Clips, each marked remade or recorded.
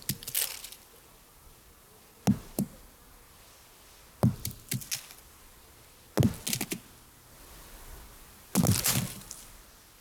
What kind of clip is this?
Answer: recorded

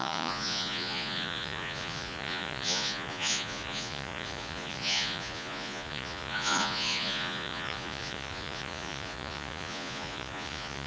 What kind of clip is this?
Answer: remade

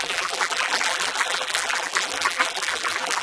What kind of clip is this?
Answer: remade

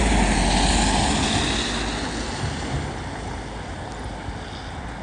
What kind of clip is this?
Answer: recorded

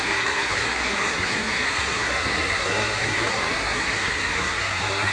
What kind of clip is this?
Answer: remade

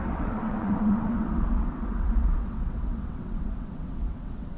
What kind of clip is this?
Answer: remade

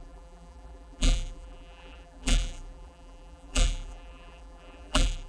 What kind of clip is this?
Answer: remade